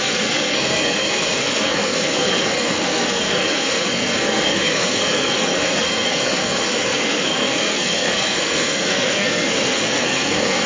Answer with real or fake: fake